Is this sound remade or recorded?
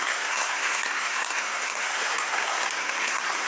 remade